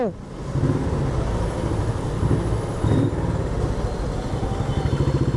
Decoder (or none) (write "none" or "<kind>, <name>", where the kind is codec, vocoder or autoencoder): none